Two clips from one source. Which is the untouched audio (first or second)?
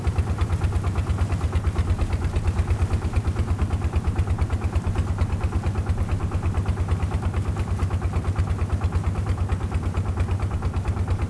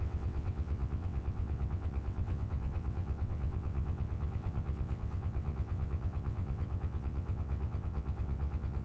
first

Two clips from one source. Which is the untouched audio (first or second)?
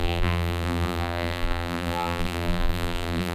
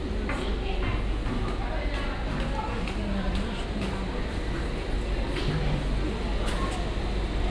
second